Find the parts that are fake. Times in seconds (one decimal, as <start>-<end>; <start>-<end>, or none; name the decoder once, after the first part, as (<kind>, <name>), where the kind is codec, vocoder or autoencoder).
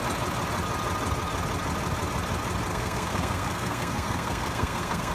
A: 2.7-5.1 (codec, SNAC)